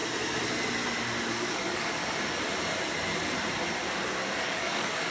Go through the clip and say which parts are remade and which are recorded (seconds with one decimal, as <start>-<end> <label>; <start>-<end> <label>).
0.0-1.3 recorded; 1.3-2.0 remade; 2.0-4.4 recorded; 4.4-5.1 remade